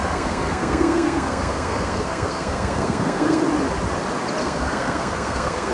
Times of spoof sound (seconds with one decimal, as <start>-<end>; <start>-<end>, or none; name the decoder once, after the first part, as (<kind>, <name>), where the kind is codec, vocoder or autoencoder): 0.0-3.4 (codec, SNAC); 4.4-5.7